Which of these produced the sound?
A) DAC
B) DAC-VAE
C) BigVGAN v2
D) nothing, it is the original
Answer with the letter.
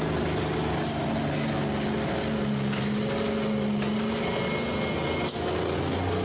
D